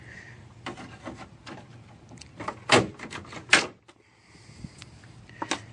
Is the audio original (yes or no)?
yes